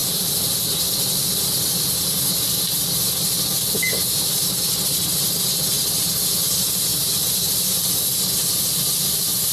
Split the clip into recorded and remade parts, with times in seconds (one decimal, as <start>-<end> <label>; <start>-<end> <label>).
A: 0.0-1.4 remade; 1.4-9.5 recorded